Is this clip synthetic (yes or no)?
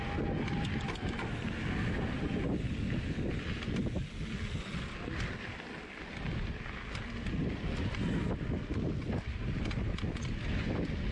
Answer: no